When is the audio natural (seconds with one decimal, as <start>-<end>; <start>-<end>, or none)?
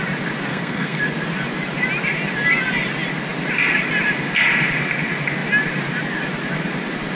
0.0-0.5; 1.0-7.1